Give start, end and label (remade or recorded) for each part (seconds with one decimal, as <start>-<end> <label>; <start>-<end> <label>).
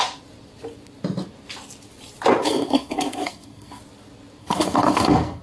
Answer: 0.0-2.4 recorded; 2.4-3.8 remade; 3.8-4.4 recorded; 4.4-5.4 remade